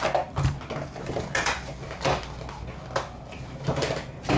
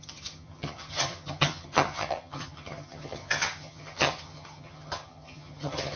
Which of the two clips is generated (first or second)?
second